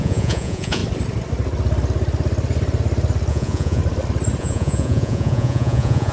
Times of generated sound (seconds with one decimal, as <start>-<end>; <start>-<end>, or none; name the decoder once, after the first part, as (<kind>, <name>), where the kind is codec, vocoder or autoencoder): 0.0-0.8 (vocoder, Vocos); 3.3-3.8; 4.4-6.1